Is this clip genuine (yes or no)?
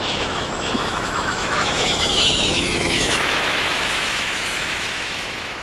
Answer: no